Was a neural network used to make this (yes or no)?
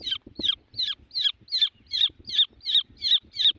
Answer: no